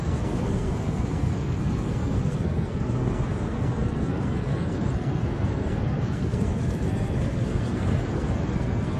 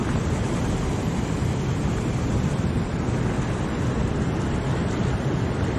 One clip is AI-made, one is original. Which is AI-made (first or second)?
first